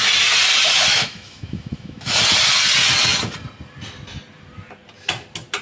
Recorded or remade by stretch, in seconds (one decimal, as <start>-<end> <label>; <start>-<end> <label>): 0.0-0.9 recorded; 0.9-2.1 remade; 2.1-5.6 recorded